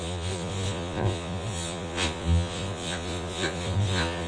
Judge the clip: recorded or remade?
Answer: remade